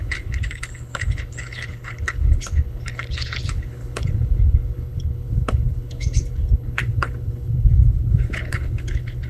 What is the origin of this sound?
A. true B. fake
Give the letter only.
B